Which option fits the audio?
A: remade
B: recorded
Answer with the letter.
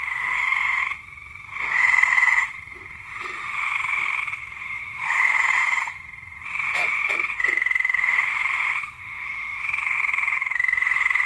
A